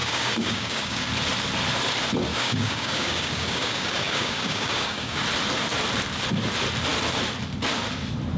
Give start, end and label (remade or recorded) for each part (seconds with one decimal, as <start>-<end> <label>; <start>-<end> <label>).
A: 0.0-1.1 remade; 1.1-2.3 recorded; 2.3-5.2 remade; 5.2-8.4 recorded